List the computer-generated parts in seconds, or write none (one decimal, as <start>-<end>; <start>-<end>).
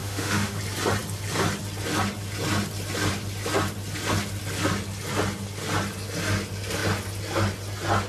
0.0-0.6